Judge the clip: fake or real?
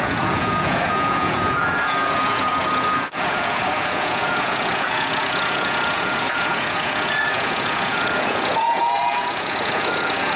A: fake